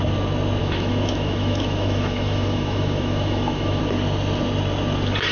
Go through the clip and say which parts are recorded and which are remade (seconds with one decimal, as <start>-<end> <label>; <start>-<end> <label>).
0.0-0.6 recorded; 0.6-3.8 remade; 3.8-5.3 recorded